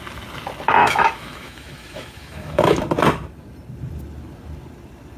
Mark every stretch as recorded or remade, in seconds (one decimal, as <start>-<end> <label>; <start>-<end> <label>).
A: 0.0-0.8 recorded; 0.8-2.8 remade; 2.8-5.2 recorded